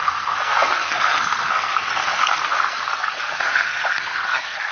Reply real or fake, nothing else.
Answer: fake